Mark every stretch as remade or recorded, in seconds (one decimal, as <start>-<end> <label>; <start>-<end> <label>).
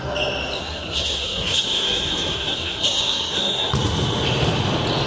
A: 0.0-0.6 recorded; 0.6-3.7 remade; 3.7-5.1 recorded